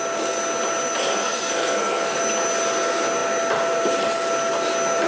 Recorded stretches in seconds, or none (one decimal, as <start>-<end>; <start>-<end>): 0.0-1.1; 2.2-5.1